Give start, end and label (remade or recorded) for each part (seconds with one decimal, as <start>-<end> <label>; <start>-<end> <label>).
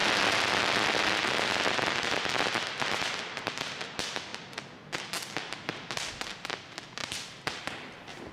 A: 0.0-8.3 recorded